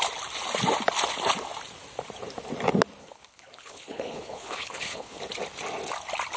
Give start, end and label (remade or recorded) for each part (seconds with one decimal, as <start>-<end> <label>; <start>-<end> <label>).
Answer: 0.0-3.0 recorded; 3.0-5.2 remade; 5.2-6.4 recorded